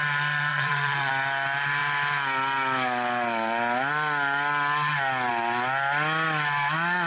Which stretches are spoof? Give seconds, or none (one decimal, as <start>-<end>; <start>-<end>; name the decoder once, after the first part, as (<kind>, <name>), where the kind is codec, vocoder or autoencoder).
0.5-1.1 (vocoder, Vocos)